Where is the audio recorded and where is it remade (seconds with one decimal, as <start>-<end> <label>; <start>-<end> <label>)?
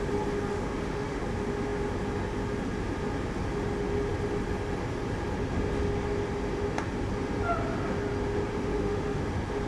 0.0-0.5 recorded; 0.5-1.2 remade; 1.2-8.5 recorded; 8.5-9.2 remade; 9.2-9.7 recorded